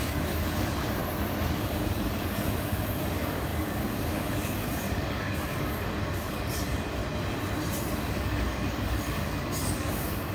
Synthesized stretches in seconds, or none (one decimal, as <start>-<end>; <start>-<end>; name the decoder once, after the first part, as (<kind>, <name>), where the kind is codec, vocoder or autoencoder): 0.0-1.0 (codec, DAC); 1.5-7.0; 8.0-10.3